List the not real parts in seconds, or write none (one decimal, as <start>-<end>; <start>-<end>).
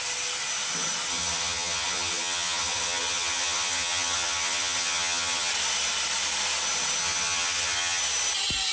1.1-5.5; 7.0-8.0